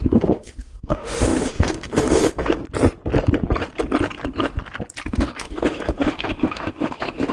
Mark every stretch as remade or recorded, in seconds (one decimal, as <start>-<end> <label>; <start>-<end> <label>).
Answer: 0.0-2.6 remade; 2.6-5.1 recorded; 5.1-7.3 remade